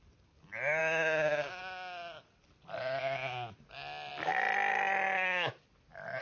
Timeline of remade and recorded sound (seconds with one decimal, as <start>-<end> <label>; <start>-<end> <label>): 0.0-0.8 recorded; 0.8-1.6 remade; 1.6-6.2 recorded